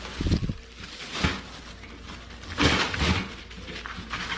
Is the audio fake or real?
real